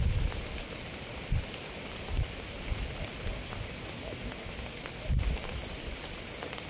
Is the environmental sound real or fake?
real